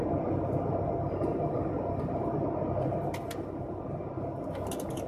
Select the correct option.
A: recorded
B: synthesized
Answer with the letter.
A